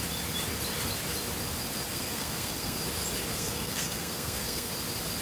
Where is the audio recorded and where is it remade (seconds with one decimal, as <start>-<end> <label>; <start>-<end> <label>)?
0.0-1.9 recorded; 1.9-2.8 remade; 2.8-3.3 recorded; 3.3-4.7 remade; 4.7-5.2 recorded